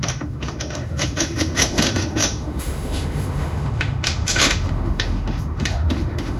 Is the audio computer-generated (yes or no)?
yes